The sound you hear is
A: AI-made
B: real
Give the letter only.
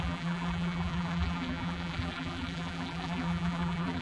A